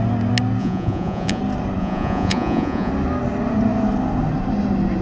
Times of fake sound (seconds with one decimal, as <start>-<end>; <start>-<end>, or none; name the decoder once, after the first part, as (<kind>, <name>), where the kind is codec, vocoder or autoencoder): 0.6-1.4 (vocoder, Vocos); 1.8-2.9